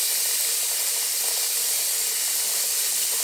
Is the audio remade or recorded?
recorded